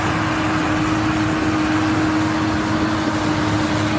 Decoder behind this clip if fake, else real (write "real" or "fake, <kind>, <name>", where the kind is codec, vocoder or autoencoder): real